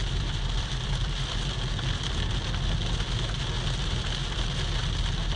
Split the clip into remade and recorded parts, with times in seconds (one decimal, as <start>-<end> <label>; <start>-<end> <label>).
0.0-1.5 remade; 1.5-5.4 recorded